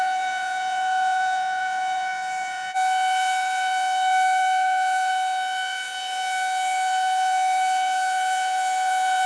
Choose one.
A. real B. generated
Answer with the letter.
B